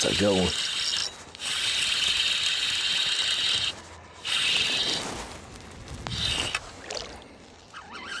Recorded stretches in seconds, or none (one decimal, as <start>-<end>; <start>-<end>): 0.0-8.2